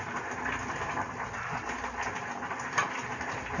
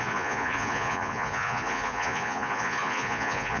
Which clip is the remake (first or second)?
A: second